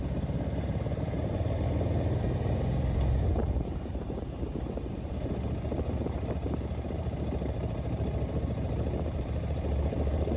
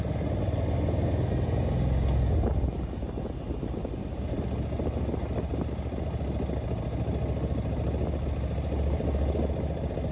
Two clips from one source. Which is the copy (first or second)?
first